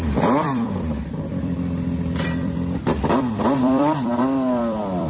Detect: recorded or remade remade